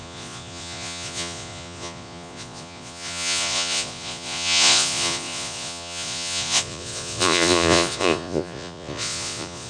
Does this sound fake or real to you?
fake